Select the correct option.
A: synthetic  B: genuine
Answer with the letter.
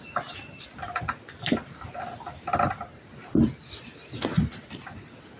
B